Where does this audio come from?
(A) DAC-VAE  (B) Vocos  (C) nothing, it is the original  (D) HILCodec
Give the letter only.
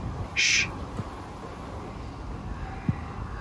C